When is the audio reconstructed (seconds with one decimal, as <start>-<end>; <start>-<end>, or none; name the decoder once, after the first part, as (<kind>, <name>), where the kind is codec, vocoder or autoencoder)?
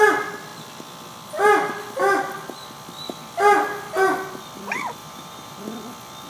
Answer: 5.0-5.6 (vocoder, BigVGAN v2)